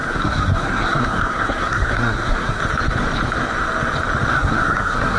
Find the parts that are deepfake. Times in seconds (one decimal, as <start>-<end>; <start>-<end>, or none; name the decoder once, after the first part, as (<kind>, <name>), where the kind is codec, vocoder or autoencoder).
0.0-2.6 (codec, SNAC); 4.3-5.2

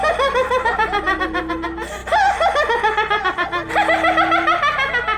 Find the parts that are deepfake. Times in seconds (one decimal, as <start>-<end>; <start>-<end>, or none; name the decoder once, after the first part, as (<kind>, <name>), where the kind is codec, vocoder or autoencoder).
0.0-1.2 (vocoder, BigVGAN v2)

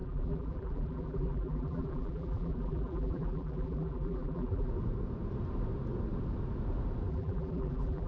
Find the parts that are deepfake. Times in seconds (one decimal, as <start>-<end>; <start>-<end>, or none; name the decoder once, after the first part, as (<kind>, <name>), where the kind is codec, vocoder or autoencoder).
0.0-4.7 (vocoder, BigVGAN v2); 7.1-8.1

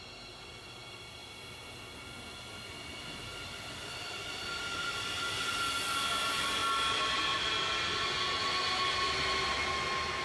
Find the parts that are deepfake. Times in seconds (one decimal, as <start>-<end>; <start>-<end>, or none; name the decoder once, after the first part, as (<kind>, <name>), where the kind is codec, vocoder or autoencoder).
none

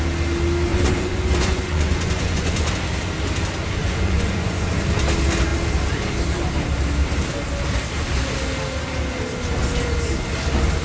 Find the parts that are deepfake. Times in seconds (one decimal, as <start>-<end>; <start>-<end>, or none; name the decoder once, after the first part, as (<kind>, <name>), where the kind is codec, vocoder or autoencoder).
0.7-2.7 (vocoder, Vocos); 3.8-4.7

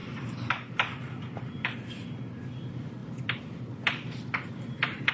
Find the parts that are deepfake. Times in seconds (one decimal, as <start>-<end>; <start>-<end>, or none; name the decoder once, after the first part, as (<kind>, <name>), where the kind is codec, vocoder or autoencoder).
none